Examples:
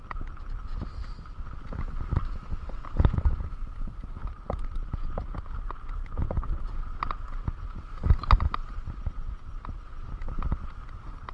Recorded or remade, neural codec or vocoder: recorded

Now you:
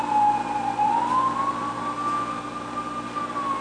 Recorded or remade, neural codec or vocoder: recorded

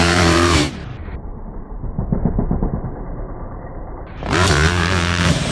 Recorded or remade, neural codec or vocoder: remade, vocoder, BigVGAN v2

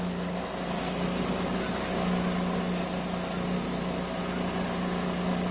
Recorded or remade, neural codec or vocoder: recorded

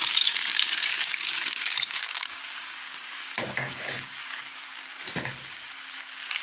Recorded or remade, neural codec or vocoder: remade, codec, DAC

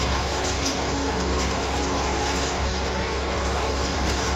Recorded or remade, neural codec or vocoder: remade, codec, DAC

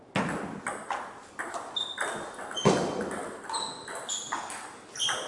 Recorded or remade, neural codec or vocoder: recorded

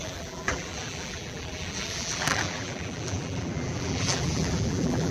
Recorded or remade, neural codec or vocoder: remade, vocoder, BigVGAN v2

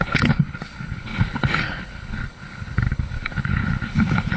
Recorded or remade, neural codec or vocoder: remade, codec, HILCodec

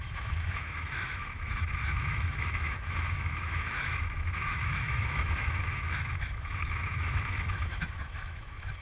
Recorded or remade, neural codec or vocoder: remade, autoencoder, DAC-VAE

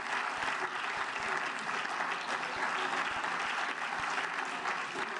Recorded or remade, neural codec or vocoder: recorded